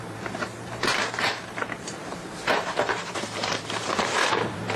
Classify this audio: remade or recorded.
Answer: remade